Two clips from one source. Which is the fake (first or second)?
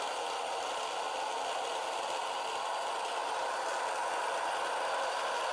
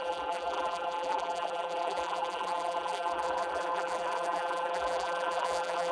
second